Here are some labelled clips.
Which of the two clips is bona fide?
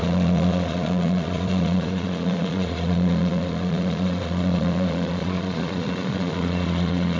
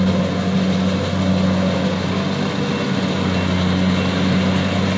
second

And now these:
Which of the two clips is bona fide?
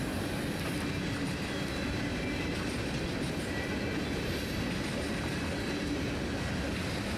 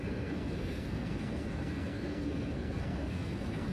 first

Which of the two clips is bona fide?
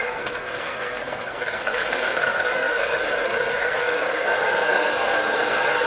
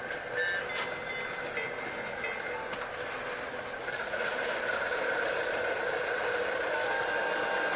second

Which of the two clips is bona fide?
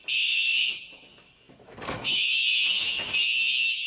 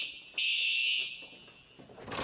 second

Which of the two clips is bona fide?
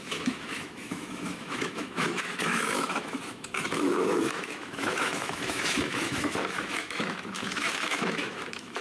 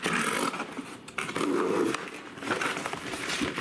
second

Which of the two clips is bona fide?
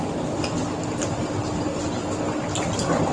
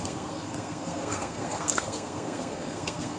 first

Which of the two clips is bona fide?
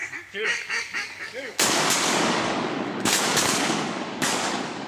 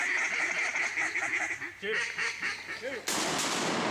second